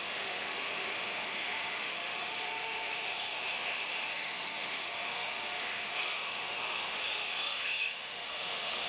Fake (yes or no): yes